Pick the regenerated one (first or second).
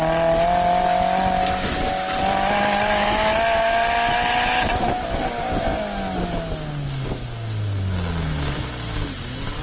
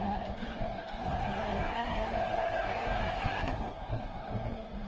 second